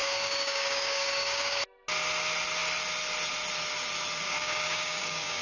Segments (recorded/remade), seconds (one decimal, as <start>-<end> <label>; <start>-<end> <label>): 0.0-1.6 remade; 1.6-4.3 recorded; 4.3-5.4 remade